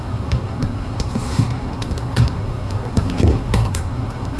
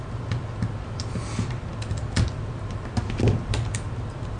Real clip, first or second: second